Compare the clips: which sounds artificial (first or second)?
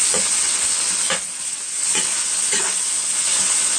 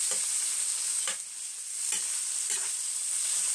first